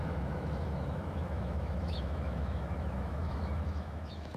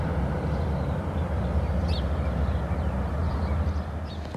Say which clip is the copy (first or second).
first